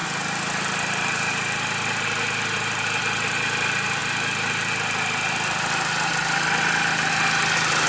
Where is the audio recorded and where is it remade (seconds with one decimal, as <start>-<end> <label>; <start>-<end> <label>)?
0.0-7.9 recorded